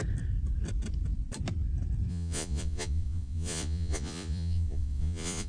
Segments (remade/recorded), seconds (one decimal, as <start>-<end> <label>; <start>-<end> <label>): 0.0-2.1 recorded; 2.1-5.5 remade